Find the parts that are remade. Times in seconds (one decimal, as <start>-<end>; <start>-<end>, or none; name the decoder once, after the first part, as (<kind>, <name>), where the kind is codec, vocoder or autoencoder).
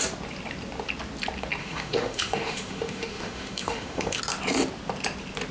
1.6-4.2 (autoencoder, DAC-VAE)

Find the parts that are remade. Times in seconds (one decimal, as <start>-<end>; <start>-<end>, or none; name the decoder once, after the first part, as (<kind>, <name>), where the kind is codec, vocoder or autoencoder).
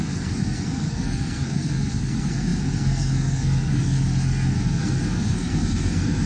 0.0-6.3 (codec, SNAC)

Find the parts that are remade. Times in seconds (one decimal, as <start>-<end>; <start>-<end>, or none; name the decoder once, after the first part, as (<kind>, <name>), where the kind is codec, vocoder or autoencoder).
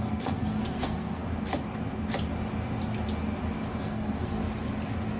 0.0-1.2 (codec, SNAC); 3.8-4.4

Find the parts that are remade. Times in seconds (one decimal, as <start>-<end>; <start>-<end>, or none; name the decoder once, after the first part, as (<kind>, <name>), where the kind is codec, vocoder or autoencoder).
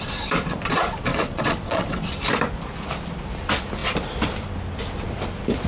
1.1-2.1 (vocoder, WaveNeXt)